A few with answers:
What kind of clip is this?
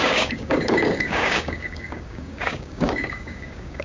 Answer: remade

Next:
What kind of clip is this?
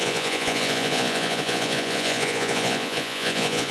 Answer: remade